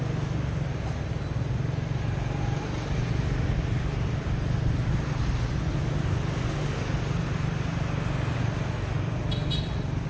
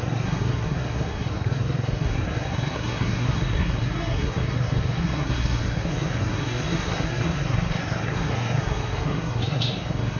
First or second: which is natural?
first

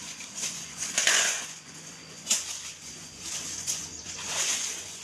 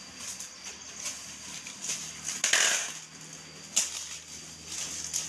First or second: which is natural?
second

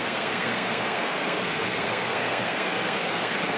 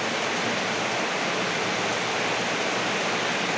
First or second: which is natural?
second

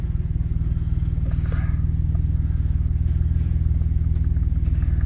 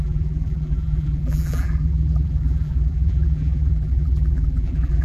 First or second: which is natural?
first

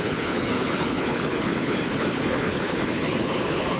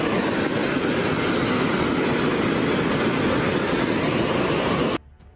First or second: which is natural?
second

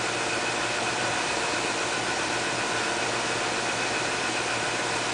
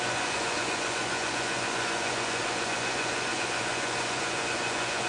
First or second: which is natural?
first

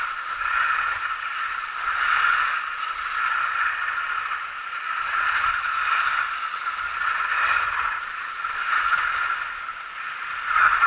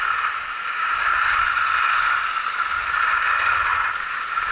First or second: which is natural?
second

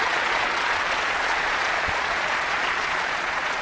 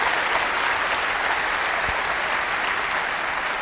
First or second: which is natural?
second